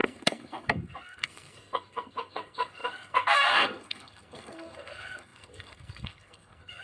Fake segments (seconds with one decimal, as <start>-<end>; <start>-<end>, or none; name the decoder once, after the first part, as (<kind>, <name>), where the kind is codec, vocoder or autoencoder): 0.0-6.8 (codec, SNAC)